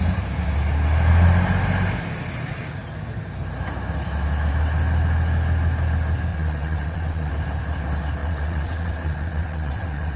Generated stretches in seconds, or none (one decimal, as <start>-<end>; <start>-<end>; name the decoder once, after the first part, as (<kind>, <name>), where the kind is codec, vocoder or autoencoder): 6.3-7.3 (vocoder, WaveNeXt); 8.2-10.2